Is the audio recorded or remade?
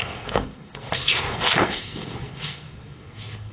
remade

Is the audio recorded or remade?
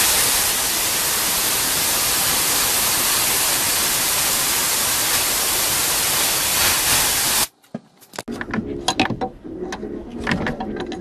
recorded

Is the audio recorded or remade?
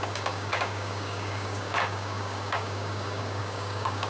remade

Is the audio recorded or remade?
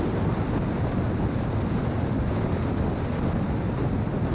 recorded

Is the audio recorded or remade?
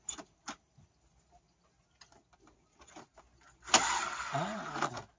recorded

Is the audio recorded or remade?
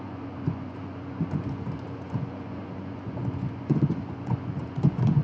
remade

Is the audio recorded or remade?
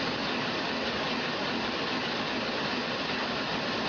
recorded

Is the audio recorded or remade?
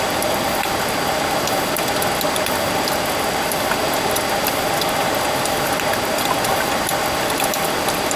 recorded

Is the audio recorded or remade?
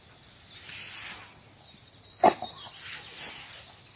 recorded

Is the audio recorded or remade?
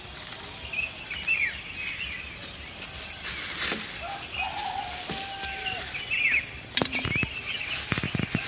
recorded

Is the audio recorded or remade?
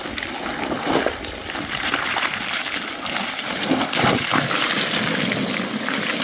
recorded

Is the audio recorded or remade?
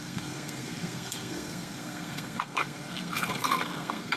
remade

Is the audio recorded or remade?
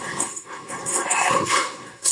remade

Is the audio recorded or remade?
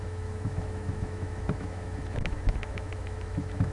remade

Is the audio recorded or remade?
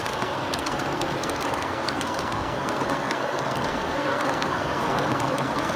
remade